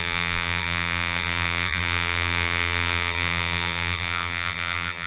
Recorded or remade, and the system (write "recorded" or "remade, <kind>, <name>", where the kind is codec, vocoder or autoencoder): remade, vocoder, BigVGAN v2